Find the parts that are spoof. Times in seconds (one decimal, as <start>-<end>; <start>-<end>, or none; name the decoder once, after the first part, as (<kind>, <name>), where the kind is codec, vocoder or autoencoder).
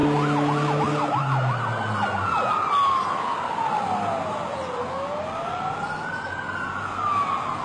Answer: none